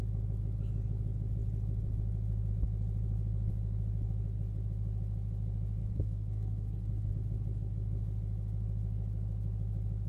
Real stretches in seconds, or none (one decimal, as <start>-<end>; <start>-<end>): 0.0-5.8; 7.1-10.1